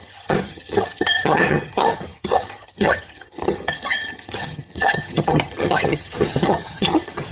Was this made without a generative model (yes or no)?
no